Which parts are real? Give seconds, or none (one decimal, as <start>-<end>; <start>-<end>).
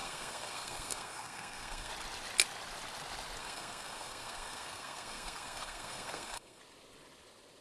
1.9-3.4; 6.6-7.6